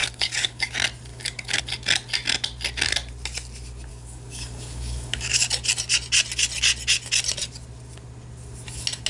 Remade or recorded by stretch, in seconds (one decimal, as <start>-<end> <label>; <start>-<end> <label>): 0.0-0.7 remade; 0.7-1.1 recorded; 1.1-1.6 remade; 1.6-3.9 recorded; 3.9-5.4 remade; 5.4-9.1 recorded